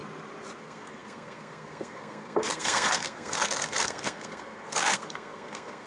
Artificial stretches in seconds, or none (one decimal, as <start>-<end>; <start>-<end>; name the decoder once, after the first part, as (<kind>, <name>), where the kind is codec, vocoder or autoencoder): 0.6-5.9 (codec, SNAC)

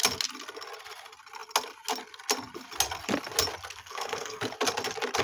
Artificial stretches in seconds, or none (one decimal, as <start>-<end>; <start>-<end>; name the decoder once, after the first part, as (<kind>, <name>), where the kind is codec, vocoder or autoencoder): 3.8-4.4 (codec, SNAC)